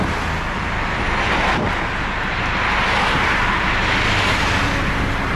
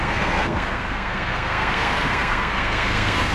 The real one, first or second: first